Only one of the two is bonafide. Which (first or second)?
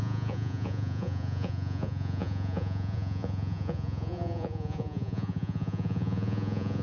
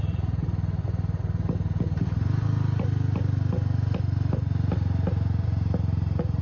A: second